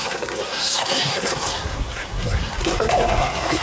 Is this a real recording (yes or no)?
no